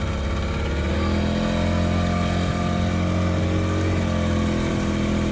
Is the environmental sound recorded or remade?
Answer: recorded